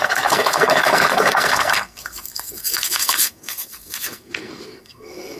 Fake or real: fake